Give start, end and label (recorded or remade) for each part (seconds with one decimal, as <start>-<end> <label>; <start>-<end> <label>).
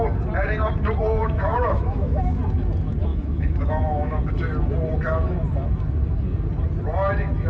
0.0-1.2 recorded; 1.2-2.4 remade; 2.4-3.1 recorded; 3.1-4.2 remade; 4.2-7.5 recorded